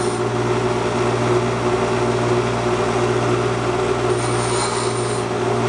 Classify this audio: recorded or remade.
recorded